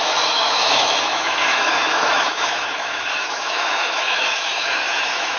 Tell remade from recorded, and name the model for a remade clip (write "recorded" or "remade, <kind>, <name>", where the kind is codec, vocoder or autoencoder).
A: remade, autoencoder, DAC-VAE